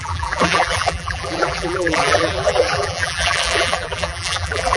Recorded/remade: remade